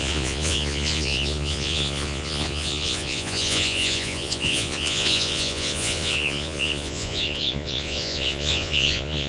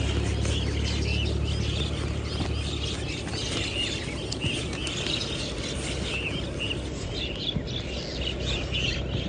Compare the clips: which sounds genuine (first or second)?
second